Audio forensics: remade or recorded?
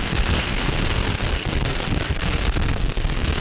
remade